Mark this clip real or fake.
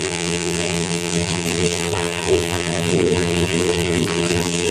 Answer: fake